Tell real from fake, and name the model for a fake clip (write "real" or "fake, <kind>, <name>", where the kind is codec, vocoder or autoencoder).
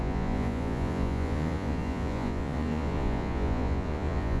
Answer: fake, vocoder, Vocos